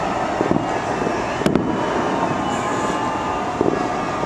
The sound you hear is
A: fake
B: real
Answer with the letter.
B